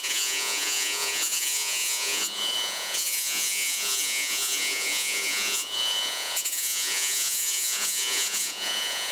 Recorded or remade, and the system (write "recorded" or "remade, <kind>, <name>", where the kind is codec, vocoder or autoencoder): remade, vocoder, Vocos